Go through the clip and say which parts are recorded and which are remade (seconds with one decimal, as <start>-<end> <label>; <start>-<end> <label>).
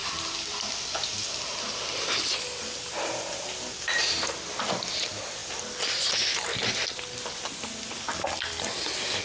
0.0-9.2 recorded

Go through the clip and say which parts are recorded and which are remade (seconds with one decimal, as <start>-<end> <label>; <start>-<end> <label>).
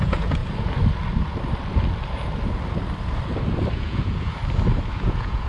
0.0-0.4 remade; 0.4-3.7 recorded; 3.7-4.4 remade; 4.4-4.9 recorded; 4.9-5.5 remade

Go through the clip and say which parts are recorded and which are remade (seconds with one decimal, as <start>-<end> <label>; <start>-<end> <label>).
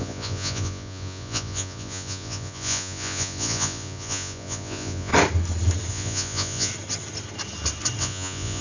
0.0-5.1 remade; 5.1-5.9 recorded; 5.9-6.7 remade; 6.7-8.0 recorded; 8.0-8.6 remade